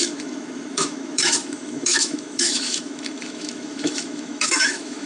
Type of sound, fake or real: fake